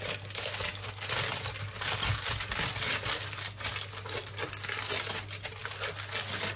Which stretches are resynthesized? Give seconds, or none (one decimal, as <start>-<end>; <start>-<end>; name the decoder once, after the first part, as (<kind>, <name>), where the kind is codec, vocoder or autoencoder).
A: none